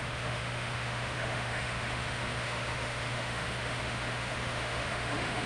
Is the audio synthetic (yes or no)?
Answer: yes